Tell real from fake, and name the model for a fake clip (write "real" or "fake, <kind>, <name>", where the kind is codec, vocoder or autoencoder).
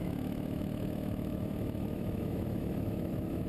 fake, autoencoder, DAC-VAE